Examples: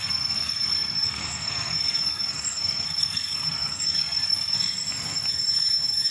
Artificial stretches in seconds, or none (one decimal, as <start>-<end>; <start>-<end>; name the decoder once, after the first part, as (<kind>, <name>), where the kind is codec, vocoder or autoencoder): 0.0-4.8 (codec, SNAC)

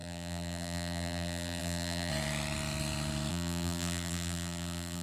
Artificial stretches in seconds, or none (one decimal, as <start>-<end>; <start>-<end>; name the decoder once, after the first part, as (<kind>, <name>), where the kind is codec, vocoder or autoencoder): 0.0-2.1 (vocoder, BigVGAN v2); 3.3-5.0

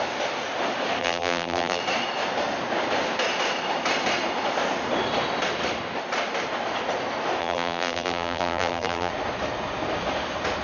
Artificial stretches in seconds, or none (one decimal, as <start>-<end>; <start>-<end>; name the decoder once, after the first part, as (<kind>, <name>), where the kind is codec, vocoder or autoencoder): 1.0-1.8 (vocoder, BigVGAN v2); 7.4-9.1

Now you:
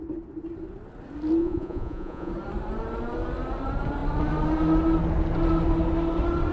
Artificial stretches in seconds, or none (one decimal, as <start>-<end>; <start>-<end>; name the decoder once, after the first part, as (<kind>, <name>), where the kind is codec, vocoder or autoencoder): 1.4-2.3 (vocoder, Vocos)

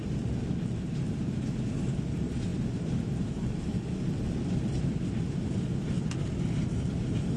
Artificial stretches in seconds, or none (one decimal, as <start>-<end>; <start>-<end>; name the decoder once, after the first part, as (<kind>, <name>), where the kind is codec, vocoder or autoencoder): none

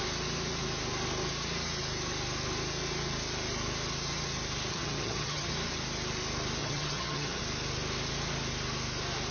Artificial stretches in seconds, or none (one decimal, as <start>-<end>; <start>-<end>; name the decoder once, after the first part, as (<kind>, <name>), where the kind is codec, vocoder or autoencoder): 4.7-5.5 (vocoder, HiFi-GAN); 6.6-7.4

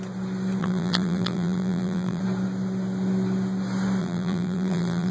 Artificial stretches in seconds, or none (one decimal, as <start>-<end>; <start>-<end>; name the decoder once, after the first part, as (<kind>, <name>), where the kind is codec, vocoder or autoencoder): 0.6-2.2 (vocoder, BigVGAN v2); 4.0-5.1